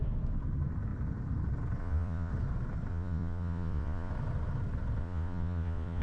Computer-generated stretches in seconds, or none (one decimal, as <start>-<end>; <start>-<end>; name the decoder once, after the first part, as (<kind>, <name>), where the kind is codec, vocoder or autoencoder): 1.8-2.3 (vocoder, Vocos); 2.9-4.1; 5.0-6.0